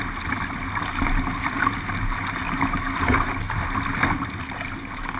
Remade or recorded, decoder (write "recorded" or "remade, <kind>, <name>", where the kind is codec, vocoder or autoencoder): recorded